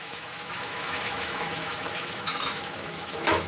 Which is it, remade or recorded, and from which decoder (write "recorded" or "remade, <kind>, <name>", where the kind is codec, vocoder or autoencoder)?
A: remade, autoencoder, DAC-VAE